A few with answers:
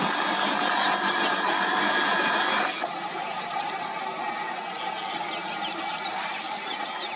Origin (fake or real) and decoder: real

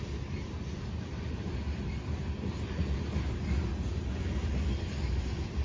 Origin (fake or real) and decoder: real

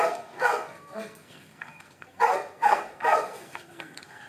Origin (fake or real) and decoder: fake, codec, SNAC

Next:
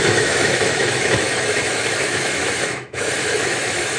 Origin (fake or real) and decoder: fake, autoencoder, DAC-VAE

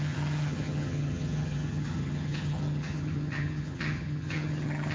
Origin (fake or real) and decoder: fake, vocoder, HiFi-GAN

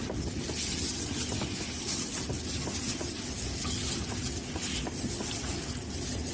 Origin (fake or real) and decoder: real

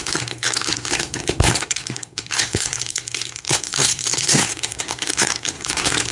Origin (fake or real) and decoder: fake, codec, SNAC